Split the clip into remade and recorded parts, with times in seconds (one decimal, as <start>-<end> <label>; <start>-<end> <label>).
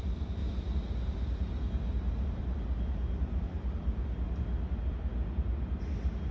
0.0-6.3 recorded